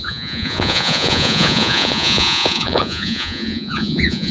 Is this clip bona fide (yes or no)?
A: no